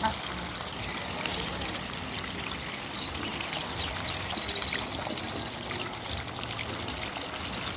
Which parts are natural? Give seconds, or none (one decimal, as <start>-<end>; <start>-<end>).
0.0-7.8